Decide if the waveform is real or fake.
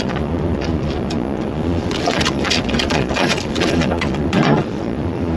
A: fake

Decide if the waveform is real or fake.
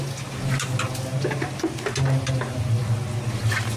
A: real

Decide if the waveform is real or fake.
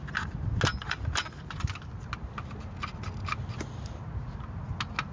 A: real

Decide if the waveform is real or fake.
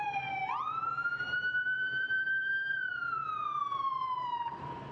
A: fake